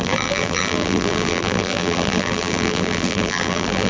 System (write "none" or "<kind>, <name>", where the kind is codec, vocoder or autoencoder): vocoder, BigVGAN v2